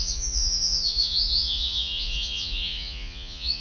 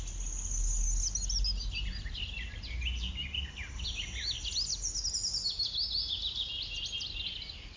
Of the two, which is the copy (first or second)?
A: first